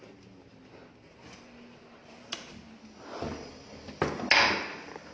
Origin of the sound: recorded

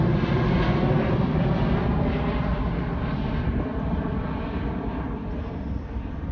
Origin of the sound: recorded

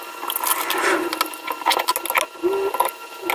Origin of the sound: recorded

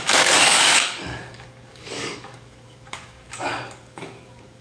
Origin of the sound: remade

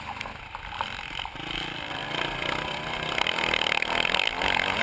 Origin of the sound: recorded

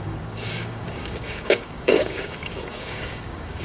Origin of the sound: remade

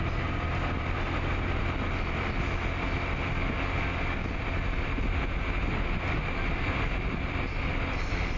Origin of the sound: recorded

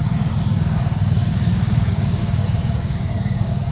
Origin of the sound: remade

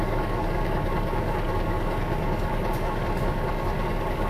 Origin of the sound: remade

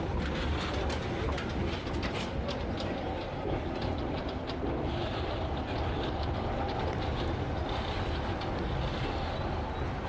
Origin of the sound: recorded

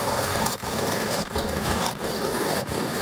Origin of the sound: remade